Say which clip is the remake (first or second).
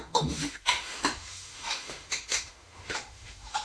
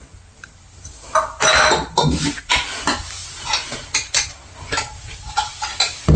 first